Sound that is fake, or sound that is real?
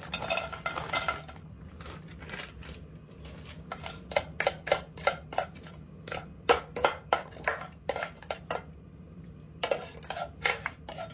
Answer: real